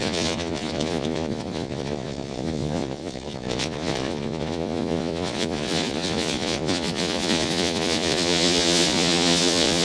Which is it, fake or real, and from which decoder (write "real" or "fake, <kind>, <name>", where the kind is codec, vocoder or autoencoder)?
fake, vocoder, Vocos